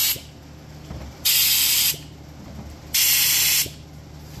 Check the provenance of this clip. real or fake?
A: real